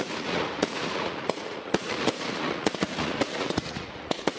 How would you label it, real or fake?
fake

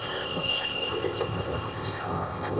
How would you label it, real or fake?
fake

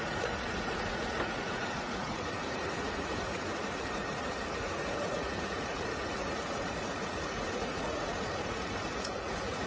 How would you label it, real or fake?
fake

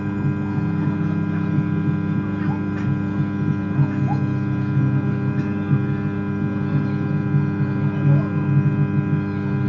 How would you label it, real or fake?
real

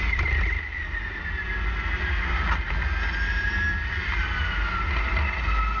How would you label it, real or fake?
real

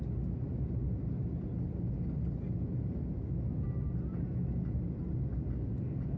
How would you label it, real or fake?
real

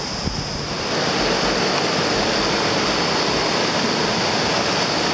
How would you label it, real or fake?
real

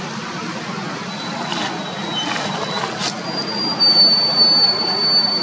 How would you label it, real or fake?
real